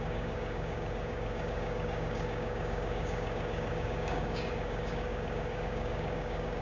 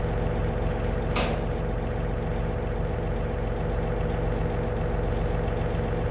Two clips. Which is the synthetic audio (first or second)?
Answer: first